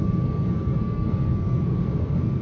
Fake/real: fake